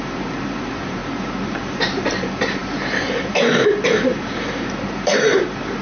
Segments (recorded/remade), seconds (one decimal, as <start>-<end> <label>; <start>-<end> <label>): 0.0-5.8 remade